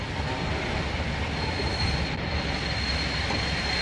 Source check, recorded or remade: recorded